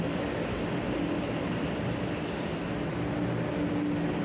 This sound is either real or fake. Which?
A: real